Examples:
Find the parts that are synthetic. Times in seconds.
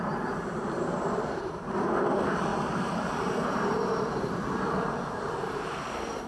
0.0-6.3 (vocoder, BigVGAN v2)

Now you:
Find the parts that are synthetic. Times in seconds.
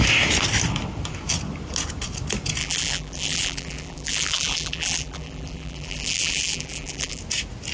2.6-7.2 (vocoder, BigVGAN v2)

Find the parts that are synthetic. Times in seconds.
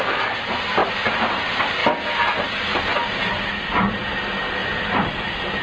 0.8-1.3 (vocoder, BigVGAN v2); 4.6-5.6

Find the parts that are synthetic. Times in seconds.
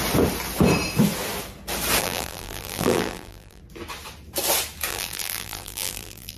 2.0-3.6 (vocoder, BigVGAN v2); 4.9-6.4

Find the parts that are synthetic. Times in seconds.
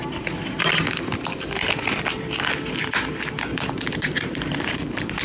3.5-5.2 (vocoder, BigVGAN v2)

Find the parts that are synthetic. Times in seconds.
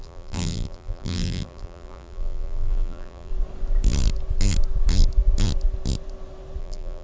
0.0-3.3 (vocoder, BigVGAN v2); 6.6-7.0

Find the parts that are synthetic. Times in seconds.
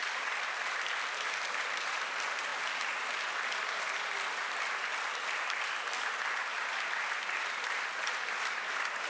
0.0-2.5 (vocoder, BigVGAN v2); 4.9-9.1